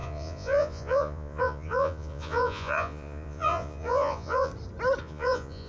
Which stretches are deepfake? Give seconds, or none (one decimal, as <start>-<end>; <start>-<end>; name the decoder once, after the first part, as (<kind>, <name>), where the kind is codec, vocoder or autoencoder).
0.0-4.5 (vocoder, Vocos); 5.0-5.7